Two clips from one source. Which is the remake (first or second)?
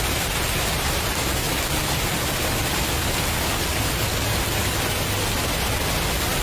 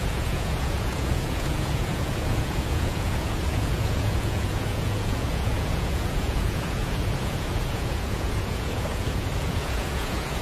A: second